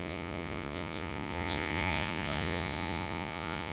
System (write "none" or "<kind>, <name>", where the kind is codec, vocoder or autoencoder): vocoder, Vocos